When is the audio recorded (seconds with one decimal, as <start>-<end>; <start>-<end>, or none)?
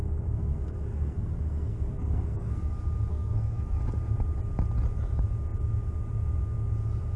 2.7-3.1; 3.8-7.2